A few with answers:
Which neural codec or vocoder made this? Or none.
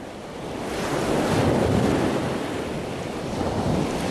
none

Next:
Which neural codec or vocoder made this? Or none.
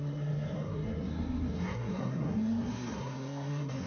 codec, SNAC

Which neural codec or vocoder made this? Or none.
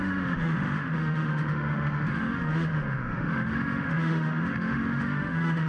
autoencoder, DAC-VAE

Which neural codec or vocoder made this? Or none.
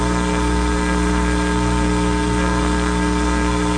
codec, SNAC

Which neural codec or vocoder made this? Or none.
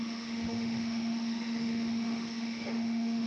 autoencoder, DAC-VAE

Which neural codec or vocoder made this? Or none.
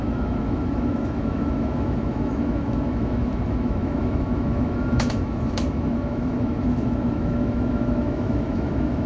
autoencoder, DAC-VAE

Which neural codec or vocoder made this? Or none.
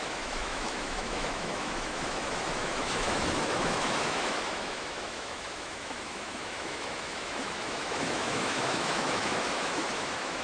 autoencoder, DAC-VAE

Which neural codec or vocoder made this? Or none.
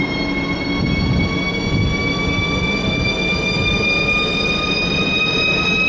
none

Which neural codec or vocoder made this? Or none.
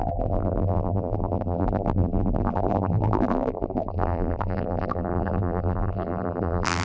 vocoder, BigVGAN v2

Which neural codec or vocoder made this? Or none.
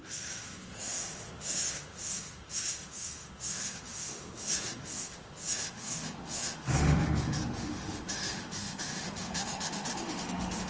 autoencoder, DAC-VAE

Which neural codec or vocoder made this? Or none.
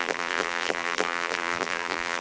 vocoder, BigVGAN v2